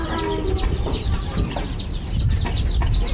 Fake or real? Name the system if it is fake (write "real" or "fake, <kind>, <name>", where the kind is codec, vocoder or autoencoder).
real